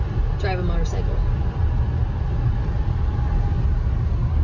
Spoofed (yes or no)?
no